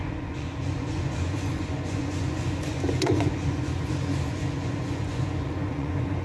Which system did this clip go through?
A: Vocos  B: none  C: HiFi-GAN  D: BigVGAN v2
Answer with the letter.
A